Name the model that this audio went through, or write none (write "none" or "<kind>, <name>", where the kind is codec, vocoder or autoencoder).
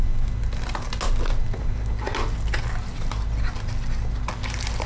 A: none